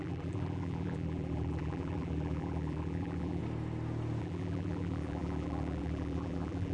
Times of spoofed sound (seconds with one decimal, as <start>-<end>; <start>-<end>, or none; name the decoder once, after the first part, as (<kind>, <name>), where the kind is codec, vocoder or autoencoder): 0.0-3.4 (vocoder, BigVGAN v2); 4.2-6.7